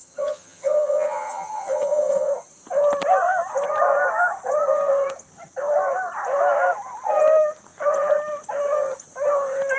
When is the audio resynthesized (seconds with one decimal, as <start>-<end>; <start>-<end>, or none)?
0.0-2.3